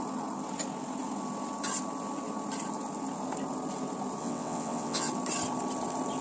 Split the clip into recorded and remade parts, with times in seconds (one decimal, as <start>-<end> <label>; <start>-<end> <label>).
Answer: 0.0-4.2 recorded; 4.2-5.1 remade; 5.1-6.2 recorded